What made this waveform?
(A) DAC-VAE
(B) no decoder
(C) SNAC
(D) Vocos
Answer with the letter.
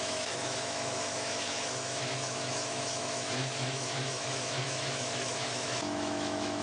A